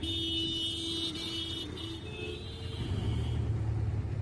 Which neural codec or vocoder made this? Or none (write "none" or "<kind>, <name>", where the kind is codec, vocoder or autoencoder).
none